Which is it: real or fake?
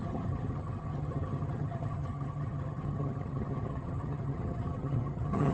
fake